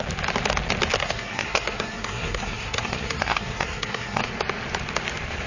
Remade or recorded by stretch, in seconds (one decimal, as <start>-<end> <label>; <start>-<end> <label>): 0.0-1.0 recorded; 1.0-4.3 remade; 4.3-5.5 recorded